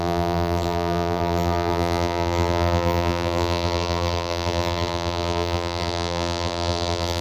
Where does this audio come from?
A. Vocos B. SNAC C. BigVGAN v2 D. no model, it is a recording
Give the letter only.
C